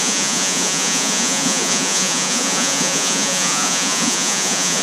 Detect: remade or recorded remade